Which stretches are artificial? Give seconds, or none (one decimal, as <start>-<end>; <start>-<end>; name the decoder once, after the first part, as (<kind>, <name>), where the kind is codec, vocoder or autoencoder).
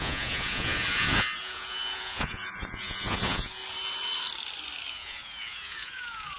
0.0-3.6 (vocoder, Vocos); 4.9-6.4